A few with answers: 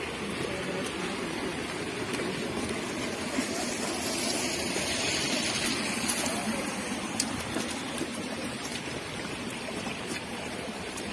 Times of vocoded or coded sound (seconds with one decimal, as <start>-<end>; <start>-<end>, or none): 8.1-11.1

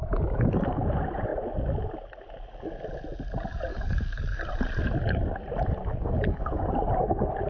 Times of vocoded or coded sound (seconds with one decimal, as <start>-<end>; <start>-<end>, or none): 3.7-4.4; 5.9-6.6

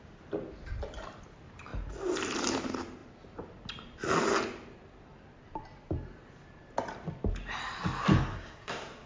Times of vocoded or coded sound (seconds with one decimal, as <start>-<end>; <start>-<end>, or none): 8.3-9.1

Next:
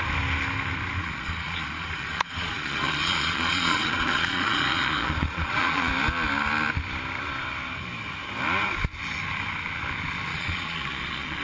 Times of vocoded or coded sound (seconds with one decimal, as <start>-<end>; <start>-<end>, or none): 1.0-5.9; 10.3-11.4